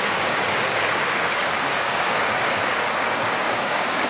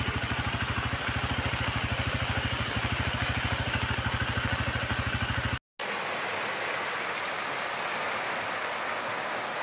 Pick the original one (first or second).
second